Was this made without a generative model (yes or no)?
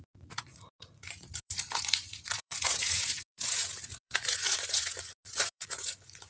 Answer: no